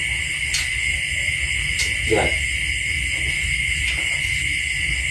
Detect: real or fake real